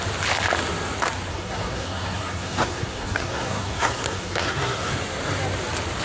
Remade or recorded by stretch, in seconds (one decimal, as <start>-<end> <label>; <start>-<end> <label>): 0.0-1.3 recorded; 1.3-4.9 remade; 4.9-6.0 recorded